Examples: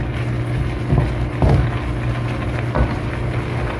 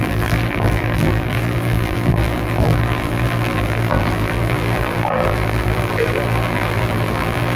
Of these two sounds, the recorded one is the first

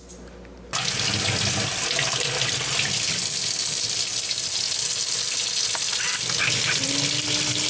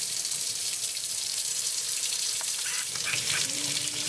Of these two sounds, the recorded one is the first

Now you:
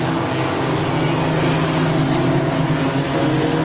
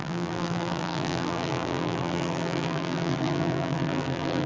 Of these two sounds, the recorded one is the first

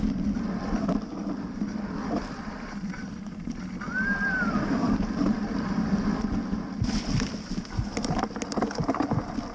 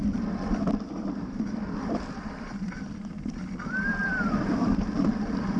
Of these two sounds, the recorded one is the first